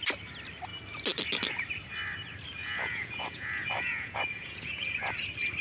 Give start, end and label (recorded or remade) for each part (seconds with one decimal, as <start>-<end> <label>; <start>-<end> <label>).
0.0-2.6 recorded; 2.6-5.1 remade; 5.1-5.6 recorded